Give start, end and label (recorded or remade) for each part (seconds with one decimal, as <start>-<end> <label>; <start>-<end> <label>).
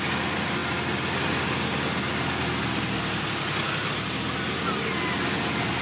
0.0-5.8 recorded